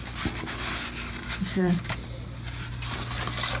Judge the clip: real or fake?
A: real